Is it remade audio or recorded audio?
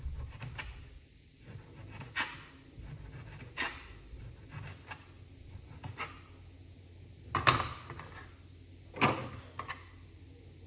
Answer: recorded